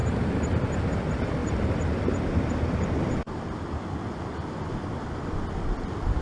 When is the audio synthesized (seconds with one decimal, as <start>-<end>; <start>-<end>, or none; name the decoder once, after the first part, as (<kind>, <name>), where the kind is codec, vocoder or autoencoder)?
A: 0.0-0.5 (vocoder, BigVGAN v2); 1.4-2.5